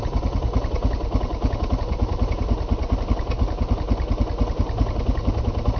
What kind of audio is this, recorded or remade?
recorded